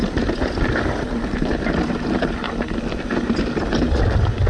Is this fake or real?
real